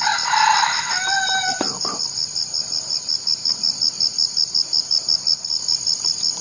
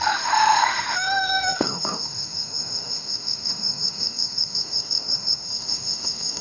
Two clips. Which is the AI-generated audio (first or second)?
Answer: second